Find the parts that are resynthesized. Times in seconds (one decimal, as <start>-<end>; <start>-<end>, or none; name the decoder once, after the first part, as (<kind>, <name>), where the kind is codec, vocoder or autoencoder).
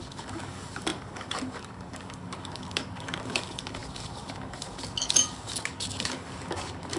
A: 0.0-7.0 (codec, DAC)